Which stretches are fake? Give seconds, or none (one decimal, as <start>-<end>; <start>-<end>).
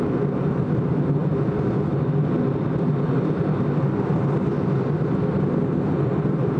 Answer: none